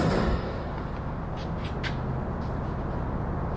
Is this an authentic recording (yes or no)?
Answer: yes